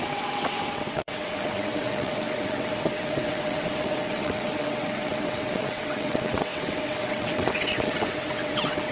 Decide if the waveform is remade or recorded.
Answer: remade